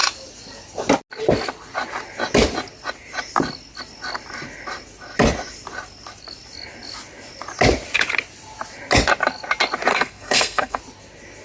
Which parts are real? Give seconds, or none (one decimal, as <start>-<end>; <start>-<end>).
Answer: 0.0-9.9; 10.8-11.4